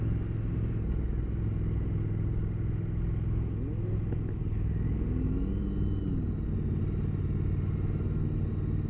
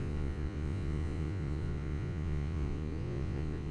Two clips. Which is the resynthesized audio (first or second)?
second